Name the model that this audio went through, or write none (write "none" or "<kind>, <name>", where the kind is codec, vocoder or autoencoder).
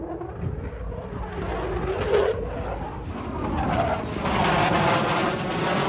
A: none